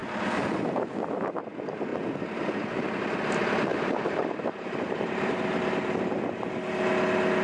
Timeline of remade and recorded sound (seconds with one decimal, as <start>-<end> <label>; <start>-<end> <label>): 0.0-3.7 recorded; 3.7-5.3 remade; 5.3-7.4 recorded